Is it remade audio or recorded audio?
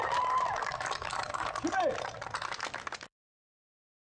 remade